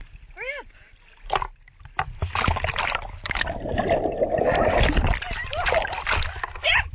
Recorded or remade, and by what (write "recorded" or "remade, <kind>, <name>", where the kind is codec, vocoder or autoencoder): recorded